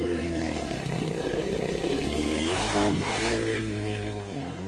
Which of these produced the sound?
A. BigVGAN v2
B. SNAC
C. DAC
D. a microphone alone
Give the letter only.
B